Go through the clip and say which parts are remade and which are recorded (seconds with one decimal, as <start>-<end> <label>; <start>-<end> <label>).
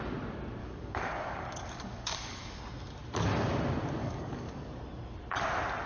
0.0-0.6 recorded; 0.6-2.6 remade; 2.6-4.0 recorded; 4.0-4.7 remade; 4.7-5.9 recorded